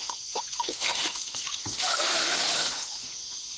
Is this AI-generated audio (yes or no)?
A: yes